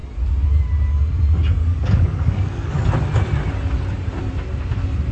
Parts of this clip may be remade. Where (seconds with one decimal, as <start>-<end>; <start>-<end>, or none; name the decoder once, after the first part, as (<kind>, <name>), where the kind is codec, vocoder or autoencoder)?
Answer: 1.6-2.9 (codec, DAC)